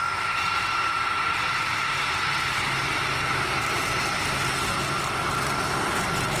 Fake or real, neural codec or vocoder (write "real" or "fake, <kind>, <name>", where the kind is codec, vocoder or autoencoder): real